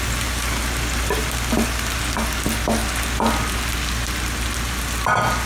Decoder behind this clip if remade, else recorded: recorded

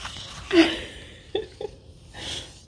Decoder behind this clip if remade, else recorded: recorded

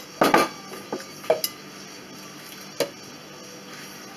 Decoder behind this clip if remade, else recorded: recorded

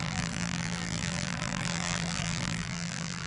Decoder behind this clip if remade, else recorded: remade, vocoder, BigVGAN v2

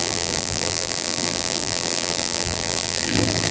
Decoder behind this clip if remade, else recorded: remade, vocoder, BigVGAN v2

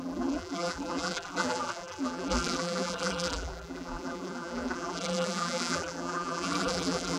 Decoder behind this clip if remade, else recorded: remade, vocoder, BigVGAN v2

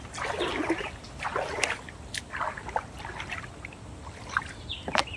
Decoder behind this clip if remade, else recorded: remade, vocoder, BigVGAN v2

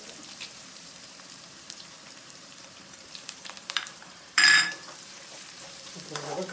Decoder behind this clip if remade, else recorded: remade, vocoder, BigVGAN v2